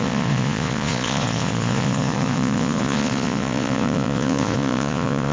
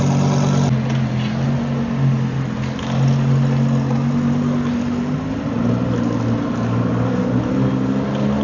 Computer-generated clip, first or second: first